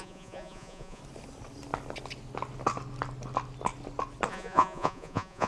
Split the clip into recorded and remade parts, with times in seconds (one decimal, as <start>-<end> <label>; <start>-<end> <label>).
0.0-1.0 remade; 1.0-4.3 recorded; 4.3-5.5 remade

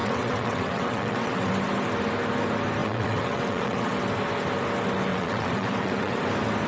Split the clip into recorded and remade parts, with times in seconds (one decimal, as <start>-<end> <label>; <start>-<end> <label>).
0.0-1.5 remade; 1.5-2.8 recorded; 2.8-3.9 remade; 3.9-5.1 recorded; 5.1-6.2 remade; 6.2-6.7 recorded

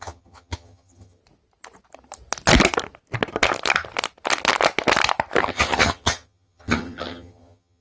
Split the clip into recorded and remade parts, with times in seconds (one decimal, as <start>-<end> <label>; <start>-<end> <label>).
0.0-1.2 remade; 1.2-5.4 recorded; 5.4-7.8 remade

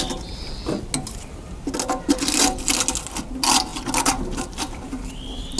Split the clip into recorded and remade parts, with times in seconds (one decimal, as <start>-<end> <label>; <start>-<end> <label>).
0.0-5.6 recorded